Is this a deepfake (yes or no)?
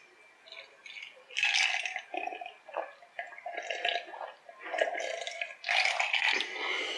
no